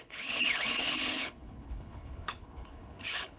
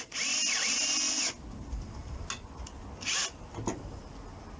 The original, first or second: second